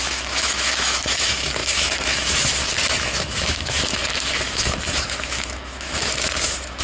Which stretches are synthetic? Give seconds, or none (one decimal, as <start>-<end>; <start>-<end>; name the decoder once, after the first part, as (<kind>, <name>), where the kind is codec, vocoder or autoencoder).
0.0-6.8 (autoencoder, DAC-VAE)